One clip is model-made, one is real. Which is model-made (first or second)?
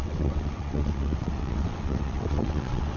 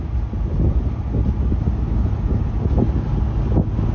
first